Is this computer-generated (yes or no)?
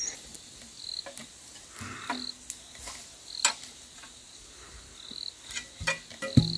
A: no